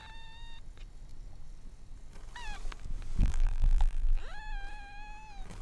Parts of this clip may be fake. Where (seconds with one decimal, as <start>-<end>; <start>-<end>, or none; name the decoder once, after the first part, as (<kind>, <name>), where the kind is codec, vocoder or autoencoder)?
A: 3.2-4.2 (vocoder, BigVGAN v2)